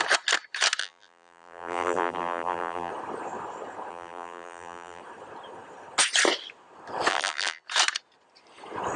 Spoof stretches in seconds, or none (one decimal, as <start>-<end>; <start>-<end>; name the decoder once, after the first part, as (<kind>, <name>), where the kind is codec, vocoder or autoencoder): 0.8-2.9 (vocoder, BigVGAN v2); 3.9-5.0; 7.1-7.6